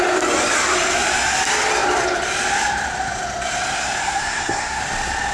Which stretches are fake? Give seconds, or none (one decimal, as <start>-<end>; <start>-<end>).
4.0-4.8